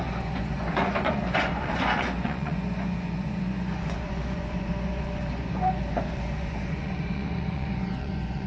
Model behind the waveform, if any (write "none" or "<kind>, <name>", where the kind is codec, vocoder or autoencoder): vocoder, Vocos